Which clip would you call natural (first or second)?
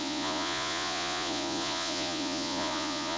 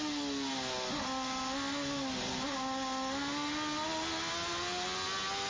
second